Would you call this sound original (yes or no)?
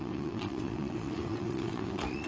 no